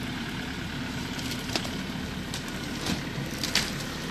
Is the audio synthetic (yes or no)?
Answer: no